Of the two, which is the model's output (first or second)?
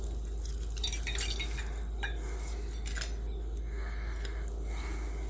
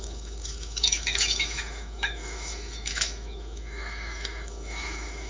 second